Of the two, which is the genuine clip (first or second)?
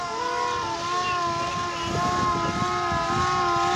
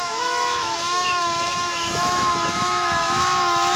first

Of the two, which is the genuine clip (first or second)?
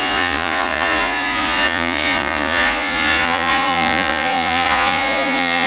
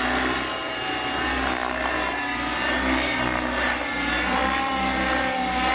second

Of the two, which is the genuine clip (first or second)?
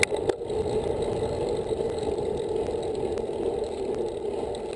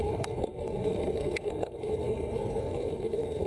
first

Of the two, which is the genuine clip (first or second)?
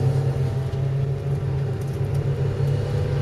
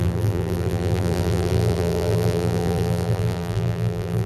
first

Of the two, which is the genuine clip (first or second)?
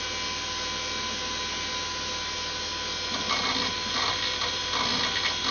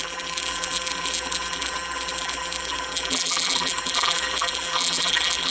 first